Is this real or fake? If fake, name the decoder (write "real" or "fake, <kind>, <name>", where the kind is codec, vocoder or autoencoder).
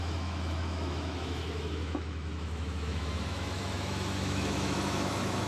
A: fake, autoencoder, DAC-VAE